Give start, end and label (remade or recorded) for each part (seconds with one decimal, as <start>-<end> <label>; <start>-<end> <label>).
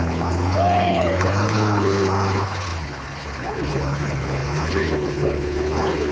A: 0.0-6.1 remade